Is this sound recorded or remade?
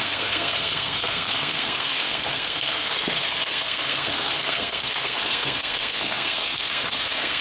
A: remade